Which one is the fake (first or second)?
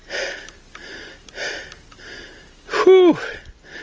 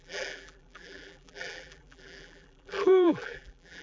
second